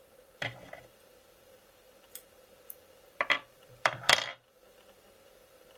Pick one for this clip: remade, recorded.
remade